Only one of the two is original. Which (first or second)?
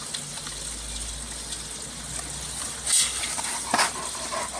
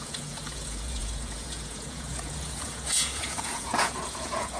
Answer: first